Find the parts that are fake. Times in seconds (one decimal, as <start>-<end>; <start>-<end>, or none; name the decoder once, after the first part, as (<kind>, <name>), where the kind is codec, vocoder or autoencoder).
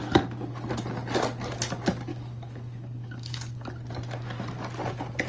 2.1-3.7 (codec, DAC)